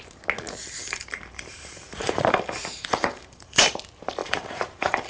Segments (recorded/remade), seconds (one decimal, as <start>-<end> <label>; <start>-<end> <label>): 0.0-0.6 recorded; 0.6-3.7 remade; 3.7-4.2 recorded; 4.2-5.1 remade